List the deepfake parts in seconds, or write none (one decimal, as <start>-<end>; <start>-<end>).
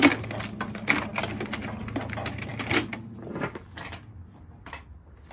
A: none